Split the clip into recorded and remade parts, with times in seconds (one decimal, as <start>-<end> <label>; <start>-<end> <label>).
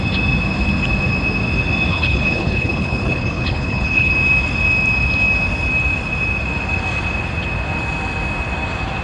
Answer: 0.0-1.9 recorded; 1.9-4.1 remade; 4.1-9.0 recorded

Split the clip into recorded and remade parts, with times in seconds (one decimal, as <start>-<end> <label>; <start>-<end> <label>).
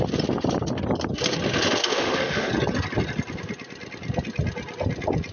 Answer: 0.0-1.8 recorded; 1.8-2.5 remade; 2.5-5.3 recorded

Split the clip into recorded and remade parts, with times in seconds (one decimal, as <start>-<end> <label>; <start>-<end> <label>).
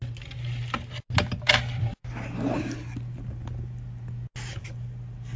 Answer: 0.0-5.4 recorded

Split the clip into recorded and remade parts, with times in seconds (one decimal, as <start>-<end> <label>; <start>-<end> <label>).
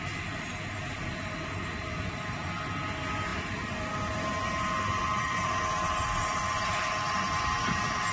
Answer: 0.0-8.1 recorded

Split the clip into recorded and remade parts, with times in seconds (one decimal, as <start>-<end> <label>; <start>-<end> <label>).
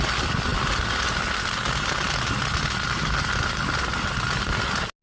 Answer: 0.0-5.0 recorded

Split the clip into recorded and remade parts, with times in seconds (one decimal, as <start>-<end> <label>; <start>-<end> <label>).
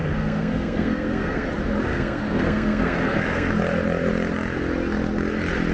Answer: 0.0-1.5 remade; 1.5-1.9 recorded; 1.9-3.5 remade; 3.5-5.7 recorded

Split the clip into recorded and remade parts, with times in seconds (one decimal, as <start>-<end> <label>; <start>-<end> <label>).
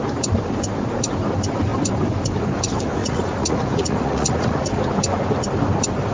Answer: 0.0-3.0 recorded; 3.0-4.8 remade; 4.8-6.1 recorded